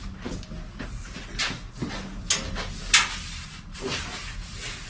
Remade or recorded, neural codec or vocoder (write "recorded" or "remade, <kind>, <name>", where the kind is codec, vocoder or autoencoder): recorded